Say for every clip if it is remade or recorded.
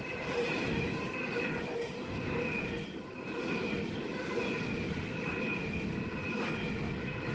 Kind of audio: recorded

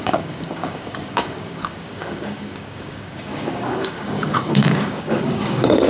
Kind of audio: remade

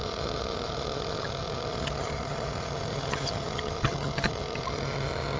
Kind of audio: remade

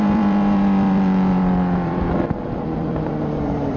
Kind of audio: remade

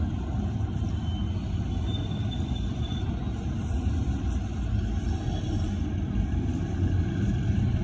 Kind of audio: remade